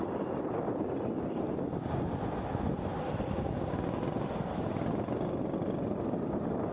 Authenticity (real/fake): real